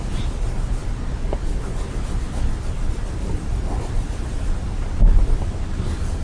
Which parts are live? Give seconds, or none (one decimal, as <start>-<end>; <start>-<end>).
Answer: 0.0-6.2

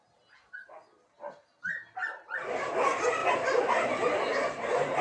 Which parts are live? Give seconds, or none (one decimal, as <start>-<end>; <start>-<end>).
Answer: 0.0-5.0

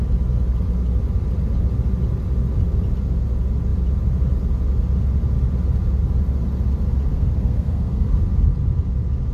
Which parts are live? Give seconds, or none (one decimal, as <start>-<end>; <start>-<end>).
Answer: 0.0-7.1; 8.2-9.3

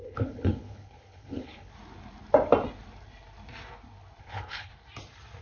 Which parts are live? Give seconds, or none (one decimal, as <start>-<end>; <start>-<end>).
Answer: 1.7-4.2; 4.7-5.4

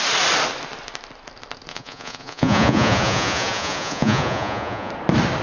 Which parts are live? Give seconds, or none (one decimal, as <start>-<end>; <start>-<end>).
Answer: 0.0-1.7; 4.9-5.4

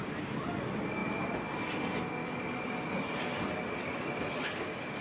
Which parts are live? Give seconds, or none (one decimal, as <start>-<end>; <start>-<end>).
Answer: 0.0-5.0